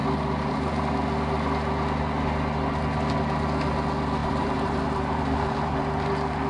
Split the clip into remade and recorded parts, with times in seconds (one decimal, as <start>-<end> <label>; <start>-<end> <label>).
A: 0.0-0.8 remade; 0.8-4.2 recorded; 4.2-5.8 remade; 5.8-6.5 recorded